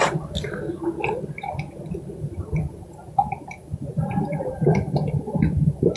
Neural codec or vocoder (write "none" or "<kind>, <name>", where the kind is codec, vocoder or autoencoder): vocoder, BigVGAN v2